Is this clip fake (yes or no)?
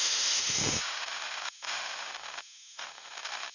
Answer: yes